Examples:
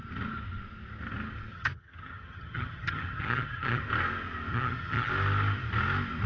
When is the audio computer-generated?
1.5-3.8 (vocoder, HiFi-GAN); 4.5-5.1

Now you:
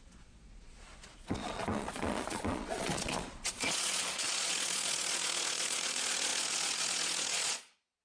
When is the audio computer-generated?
0.0-8.0 (vocoder, Vocos)

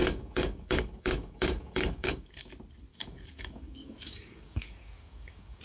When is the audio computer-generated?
0.0-2.5 (codec, DAC); 2.9-5.6

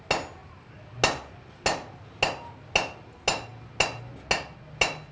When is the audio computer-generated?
none